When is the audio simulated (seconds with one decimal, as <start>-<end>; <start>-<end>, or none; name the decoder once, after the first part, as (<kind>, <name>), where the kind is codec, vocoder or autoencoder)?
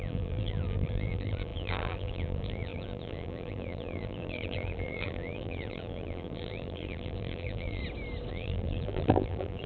0.0-7.8 (vocoder, BigVGAN v2); 8.3-9.7